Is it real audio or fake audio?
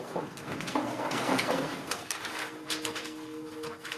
fake